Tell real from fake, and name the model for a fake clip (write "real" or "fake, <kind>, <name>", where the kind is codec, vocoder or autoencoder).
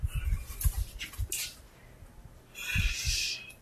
real